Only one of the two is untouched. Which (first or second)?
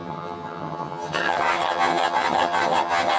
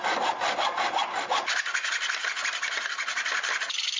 second